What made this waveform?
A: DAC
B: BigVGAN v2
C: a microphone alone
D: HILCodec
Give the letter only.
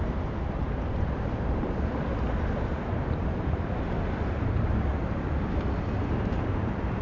B